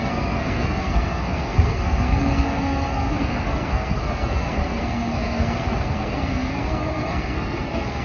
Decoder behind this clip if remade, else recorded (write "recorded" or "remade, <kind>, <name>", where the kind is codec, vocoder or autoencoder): remade, codec, SNAC